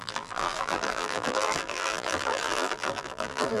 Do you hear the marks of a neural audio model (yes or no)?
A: yes